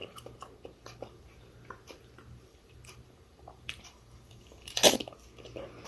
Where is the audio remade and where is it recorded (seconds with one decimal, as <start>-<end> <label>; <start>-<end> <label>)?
0.0-4.8 remade; 4.8-5.9 recorded